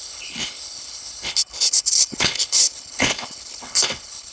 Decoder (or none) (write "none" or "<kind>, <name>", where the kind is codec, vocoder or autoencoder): codec, HILCodec